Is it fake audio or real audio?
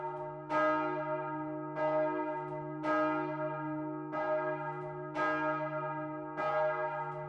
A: real